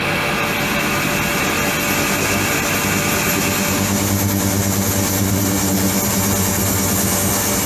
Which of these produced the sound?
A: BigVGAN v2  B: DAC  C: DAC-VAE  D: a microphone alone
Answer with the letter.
D